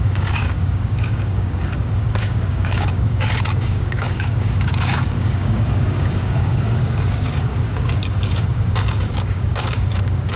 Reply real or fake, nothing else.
fake